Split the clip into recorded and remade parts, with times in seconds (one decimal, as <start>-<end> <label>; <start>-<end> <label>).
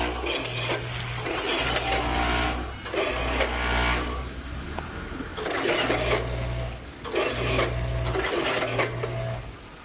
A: 0.0-9.8 recorded